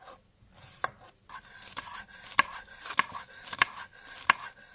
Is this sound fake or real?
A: real